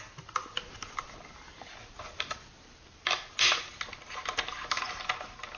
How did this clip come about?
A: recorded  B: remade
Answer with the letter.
A